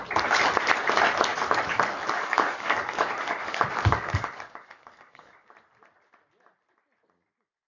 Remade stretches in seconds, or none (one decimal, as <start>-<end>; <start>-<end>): 1.3-5.5